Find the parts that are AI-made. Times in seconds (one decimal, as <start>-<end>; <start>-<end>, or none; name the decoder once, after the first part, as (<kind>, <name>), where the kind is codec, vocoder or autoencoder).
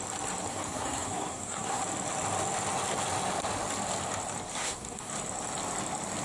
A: 0.5-1.8 (codec, SNAC); 4.6-5.1